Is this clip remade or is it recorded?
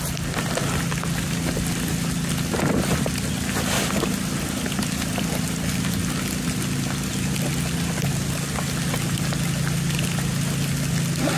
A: recorded